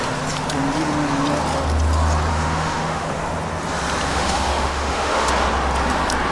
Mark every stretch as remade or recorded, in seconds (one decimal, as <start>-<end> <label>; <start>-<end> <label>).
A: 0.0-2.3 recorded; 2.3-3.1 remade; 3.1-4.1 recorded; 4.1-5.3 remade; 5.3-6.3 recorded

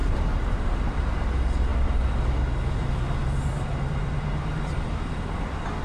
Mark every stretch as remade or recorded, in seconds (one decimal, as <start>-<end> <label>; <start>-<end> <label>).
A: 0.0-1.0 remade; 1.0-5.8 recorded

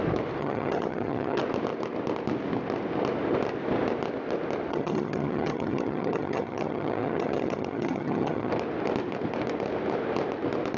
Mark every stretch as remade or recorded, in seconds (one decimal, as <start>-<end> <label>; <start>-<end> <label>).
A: 0.0-0.4 recorded; 0.4-1.4 remade; 1.4-4.7 recorded; 4.7-8.5 remade; 8.5-10.8 recorded